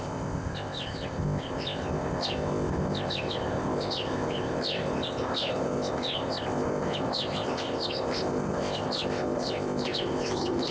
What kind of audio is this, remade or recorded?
remade